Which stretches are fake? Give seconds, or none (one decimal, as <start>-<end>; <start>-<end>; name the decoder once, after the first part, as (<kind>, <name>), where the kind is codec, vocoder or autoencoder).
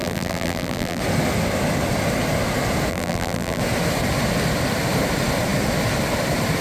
0.0-1.0 (vocoder, BigVGAN v2); 2.9-3.6